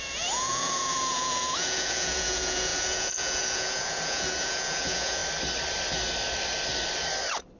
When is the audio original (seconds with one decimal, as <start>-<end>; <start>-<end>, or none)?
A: 5.2-7.6